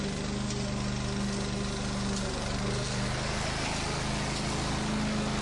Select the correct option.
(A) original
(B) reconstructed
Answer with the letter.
A